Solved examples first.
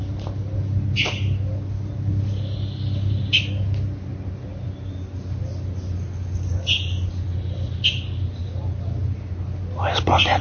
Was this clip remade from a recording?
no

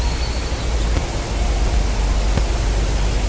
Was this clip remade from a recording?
no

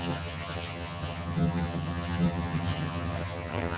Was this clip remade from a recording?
yes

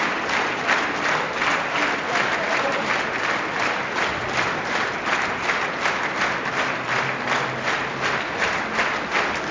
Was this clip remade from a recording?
no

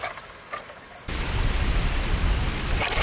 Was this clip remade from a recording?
no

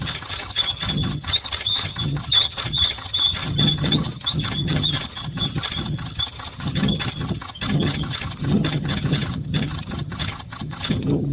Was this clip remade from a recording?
yes